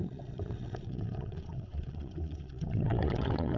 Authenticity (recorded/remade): remade